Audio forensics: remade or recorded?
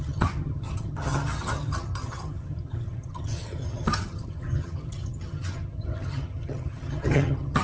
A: remade